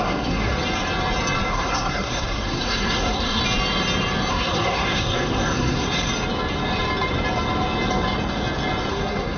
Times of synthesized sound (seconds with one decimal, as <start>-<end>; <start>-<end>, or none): 0.0-0.5; 1.5-3.4; 4.3-6.1; 8.9-9.4